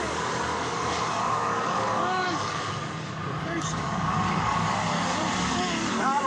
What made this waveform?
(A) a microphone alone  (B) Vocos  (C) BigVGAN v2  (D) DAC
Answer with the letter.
D